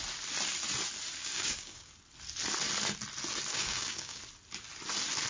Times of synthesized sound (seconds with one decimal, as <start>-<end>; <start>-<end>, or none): 1.2-1.9; 3.5-4.2